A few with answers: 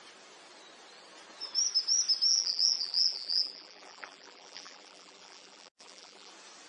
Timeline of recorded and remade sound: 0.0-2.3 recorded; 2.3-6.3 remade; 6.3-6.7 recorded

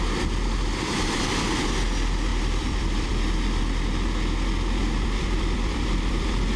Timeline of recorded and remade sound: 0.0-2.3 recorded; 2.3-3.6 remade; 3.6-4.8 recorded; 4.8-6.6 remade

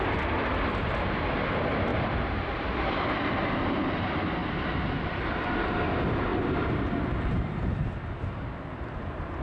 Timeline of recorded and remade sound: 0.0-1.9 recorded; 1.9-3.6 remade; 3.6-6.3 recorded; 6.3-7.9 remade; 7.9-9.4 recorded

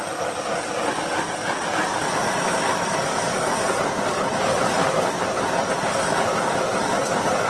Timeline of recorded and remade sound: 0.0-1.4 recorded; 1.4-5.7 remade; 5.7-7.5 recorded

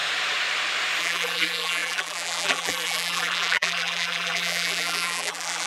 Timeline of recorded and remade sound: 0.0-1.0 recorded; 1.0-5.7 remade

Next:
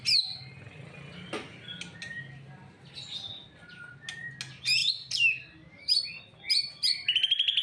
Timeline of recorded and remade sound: 0.0-4.8 recorded; 4.8-6.2 remade; 6.2-7.6 recorded

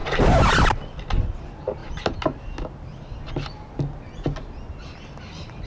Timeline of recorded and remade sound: 0.0-1.2 recorded; 1.2-1.8 remade; 1.8-5.2 recorded; 5.2-5.7 remade

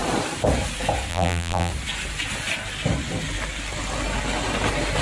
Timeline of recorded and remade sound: 0.0-1.1 recorded; 1.1-1.7 remade; 1.7-5.0 recorded